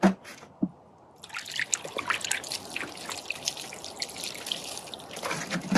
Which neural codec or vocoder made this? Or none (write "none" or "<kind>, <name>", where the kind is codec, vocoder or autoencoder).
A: none